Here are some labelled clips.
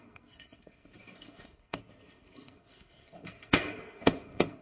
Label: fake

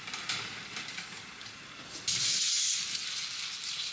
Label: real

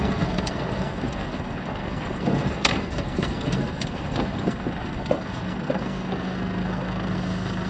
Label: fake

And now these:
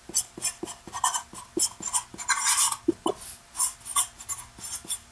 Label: real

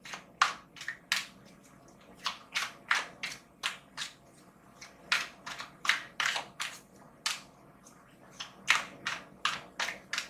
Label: real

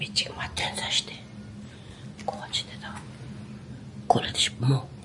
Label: real